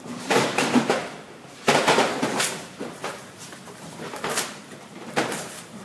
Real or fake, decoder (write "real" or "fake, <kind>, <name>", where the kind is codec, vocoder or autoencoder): fake, vocoder, BigVGAN v2